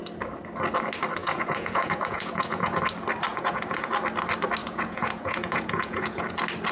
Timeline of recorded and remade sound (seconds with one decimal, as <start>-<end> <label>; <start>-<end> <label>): 0.0-1.2 recorded; 1.2-2.8 remade; 2.8-3.3 recorded; 3.3-3.9 remade; 3.9-4.6 recorded; 4.6-6.2 remade; 6.2-6.7 recorded